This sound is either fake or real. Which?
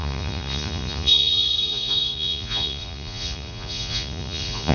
fake